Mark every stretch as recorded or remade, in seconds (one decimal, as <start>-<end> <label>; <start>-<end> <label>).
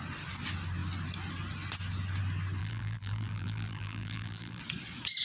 0.0-2.6 recorded; 2.6-4.6 remade; 4.6-5.2 recorded